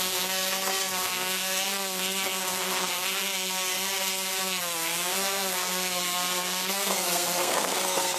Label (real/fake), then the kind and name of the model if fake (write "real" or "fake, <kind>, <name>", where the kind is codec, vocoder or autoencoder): fake, codec, SNAC